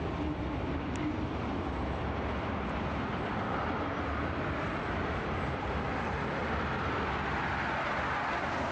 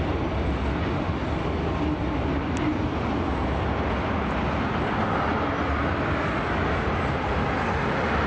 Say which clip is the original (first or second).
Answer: second